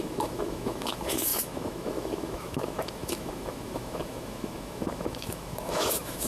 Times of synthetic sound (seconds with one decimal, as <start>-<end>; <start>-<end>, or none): 0.0-6.3